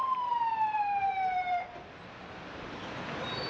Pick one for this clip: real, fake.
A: fake